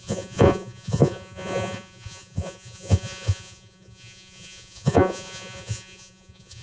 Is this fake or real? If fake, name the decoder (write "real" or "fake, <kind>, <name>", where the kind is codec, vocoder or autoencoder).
fake, vocoder, Vocos